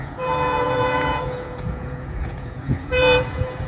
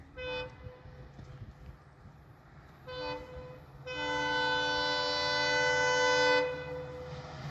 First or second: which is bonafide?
second